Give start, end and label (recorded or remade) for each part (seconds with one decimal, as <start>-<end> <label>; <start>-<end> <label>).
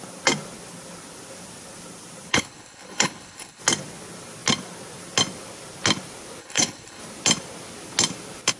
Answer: 0.0-2.3 recorded; 2.3-3.6 remade; 3.6-6.4 recorded; 6.4-7.0 remade; 7.0-8.6 recorded